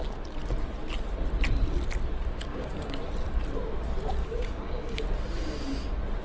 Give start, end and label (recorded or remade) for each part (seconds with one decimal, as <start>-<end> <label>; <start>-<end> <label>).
0.0-2.5 recorded; 2.5-3.1 remade; 3.1-4.2 recorded; 4.2-5.0 remade; 5.0-6.2 recorded